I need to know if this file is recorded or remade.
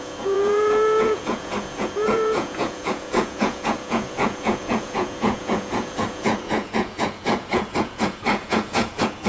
remade